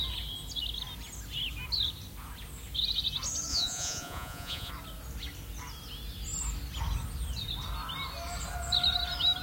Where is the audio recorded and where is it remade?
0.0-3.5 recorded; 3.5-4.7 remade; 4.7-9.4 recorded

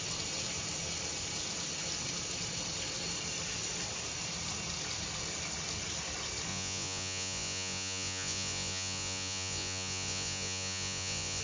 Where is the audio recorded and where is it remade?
0.0-6.5 recorded; 6.5-11.4 remade

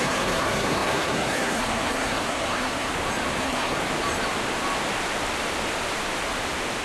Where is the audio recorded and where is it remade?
0.0-2.9 remade; 2.9-3.4 recorded; 3.4-3.8 remade; 3.8-6.8 recorded

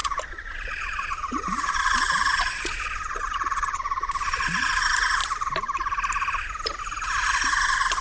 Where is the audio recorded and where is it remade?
0.0-4.8 remade; 4.8-8.0 recorded

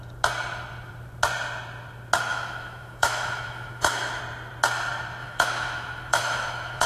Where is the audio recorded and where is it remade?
0.0-2.3 recorded; 2.3-4.2 remade; 4.2-5.2 recorded; 5.2-6.9 remade

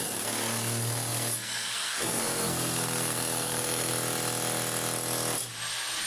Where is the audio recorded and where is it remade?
0.0-3.9 remade; 3.9-6.1 recorded